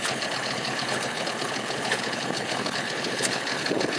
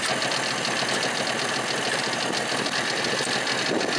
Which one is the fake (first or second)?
first